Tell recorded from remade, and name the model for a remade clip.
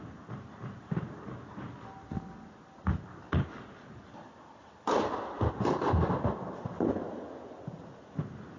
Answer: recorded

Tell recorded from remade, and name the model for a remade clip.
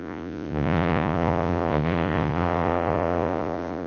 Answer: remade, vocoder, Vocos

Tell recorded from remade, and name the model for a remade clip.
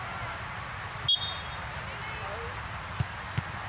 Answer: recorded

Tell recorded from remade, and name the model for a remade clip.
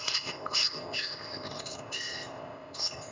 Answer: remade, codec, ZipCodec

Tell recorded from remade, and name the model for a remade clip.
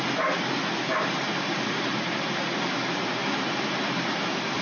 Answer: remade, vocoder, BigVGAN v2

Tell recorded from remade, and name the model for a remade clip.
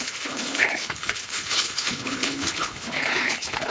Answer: remade, codec, HILCodec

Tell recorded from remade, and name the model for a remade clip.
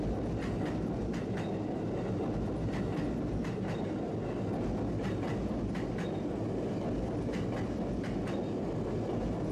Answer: recorded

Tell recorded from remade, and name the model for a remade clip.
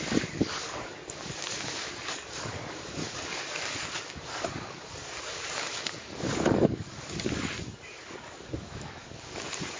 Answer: remade, codec, DAC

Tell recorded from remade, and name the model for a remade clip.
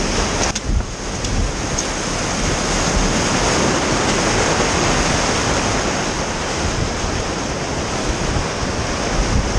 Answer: recorded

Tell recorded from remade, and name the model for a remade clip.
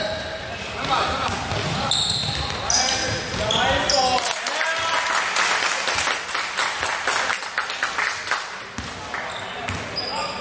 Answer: recorded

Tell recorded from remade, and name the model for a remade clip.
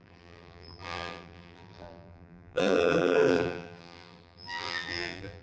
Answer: remade, vocoder, BigVGAN v2